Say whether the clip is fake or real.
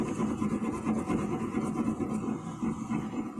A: fake